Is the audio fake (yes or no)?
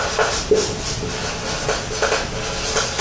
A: no